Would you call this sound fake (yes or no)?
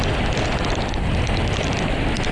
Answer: no